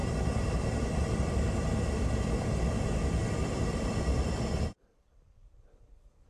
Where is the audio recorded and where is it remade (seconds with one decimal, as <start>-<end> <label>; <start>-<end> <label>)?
0.0-1.3 remade; 1.3-3.2 recorded; 3.2-5.6 remade; 5.6-6.3 recorded